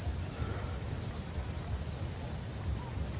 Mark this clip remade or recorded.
recorded